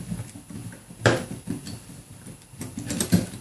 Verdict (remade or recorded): remade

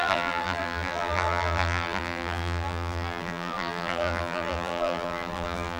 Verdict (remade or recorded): remade